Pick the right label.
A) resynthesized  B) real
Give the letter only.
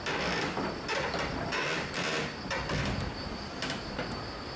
B